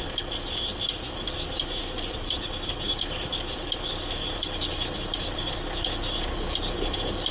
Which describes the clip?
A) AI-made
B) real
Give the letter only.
A